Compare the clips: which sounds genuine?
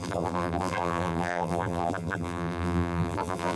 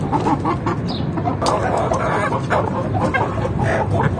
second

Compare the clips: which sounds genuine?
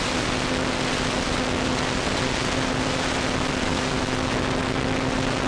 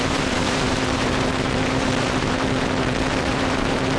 first